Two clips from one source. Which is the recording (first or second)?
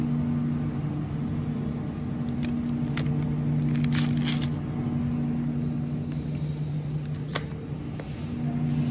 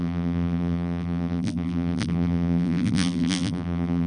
first